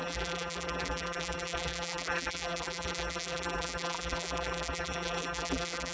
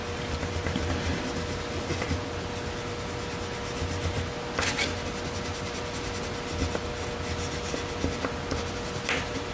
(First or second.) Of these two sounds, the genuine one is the second